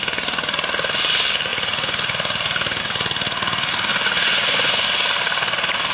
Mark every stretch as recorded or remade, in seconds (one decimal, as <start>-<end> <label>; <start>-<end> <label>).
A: 0.0-3.9 recorded; 3.9-4.7 remade; 4.7-5.9 recorded